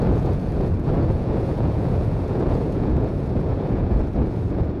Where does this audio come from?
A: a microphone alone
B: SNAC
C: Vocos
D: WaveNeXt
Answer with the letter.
C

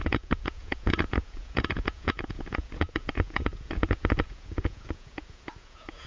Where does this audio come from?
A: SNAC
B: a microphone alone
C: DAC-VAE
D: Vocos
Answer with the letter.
D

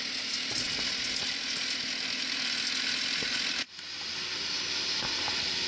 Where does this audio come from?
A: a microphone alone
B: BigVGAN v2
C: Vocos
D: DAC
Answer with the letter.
A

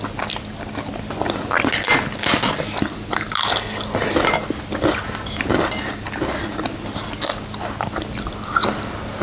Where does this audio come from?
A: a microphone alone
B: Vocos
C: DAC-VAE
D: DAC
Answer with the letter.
A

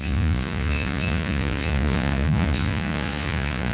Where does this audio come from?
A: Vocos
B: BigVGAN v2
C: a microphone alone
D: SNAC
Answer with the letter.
A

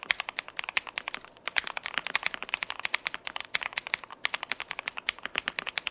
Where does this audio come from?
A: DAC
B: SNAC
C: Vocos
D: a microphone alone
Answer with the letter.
D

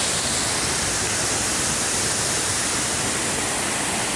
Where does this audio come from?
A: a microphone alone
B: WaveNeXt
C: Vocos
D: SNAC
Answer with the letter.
A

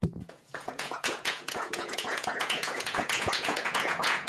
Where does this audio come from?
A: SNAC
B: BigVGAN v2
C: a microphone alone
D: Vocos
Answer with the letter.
D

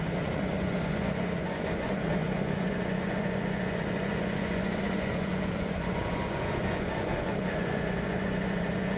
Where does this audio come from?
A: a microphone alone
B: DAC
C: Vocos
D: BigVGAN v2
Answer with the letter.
C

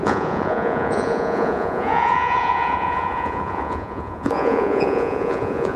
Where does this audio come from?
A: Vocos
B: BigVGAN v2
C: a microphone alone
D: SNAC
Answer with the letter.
A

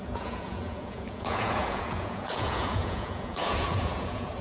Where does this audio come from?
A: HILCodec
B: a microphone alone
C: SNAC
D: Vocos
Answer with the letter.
D